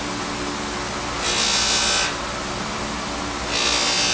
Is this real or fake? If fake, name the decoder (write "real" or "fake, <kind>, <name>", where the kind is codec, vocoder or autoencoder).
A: real